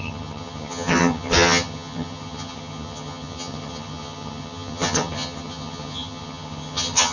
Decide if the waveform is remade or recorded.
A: remade